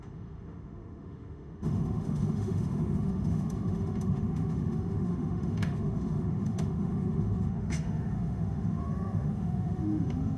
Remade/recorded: remade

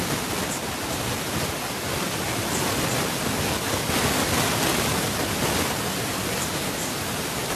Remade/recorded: recorded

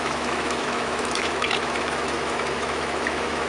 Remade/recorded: remade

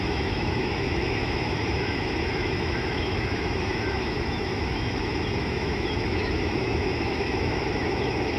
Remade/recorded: remade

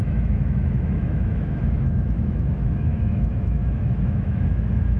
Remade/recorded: remade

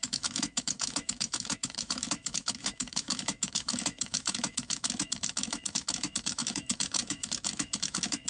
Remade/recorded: remade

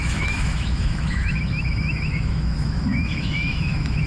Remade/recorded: remade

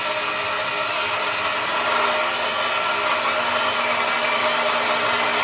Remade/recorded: recorded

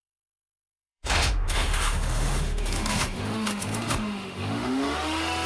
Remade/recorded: remade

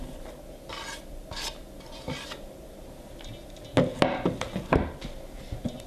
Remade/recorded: recorded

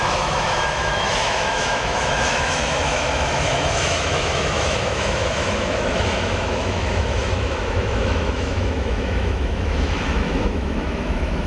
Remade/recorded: remade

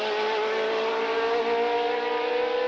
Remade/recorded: recorded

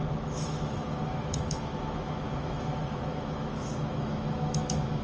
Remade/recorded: remade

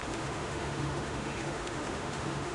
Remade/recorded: remade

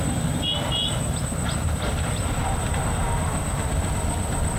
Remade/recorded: recorded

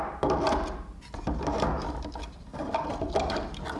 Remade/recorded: recorded